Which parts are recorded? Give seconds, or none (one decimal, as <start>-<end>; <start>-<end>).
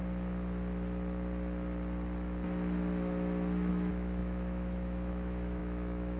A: 0.0-3.7